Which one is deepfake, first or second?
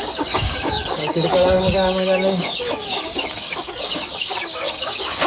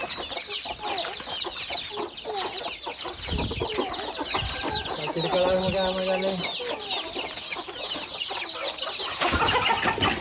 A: first